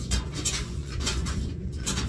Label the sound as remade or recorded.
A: remade